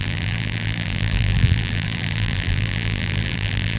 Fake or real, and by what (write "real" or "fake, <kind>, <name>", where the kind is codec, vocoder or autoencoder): fake, vocoder, BigVGAN v2